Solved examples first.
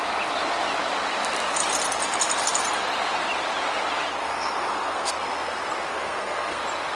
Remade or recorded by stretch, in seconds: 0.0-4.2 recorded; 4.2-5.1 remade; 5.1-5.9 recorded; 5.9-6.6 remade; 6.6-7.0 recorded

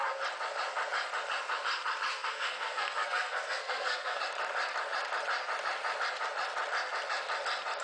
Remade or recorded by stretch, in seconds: 0.0-2.1 recorded; 2.1-4.2 remade; 4.2-7.8 recorded

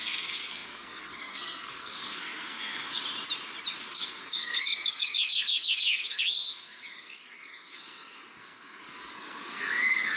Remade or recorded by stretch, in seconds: 0.0-3.0 remade; 3.0-3.8 recorded; 3.8-10.2 remade